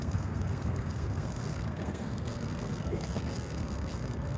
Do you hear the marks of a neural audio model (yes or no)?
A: yes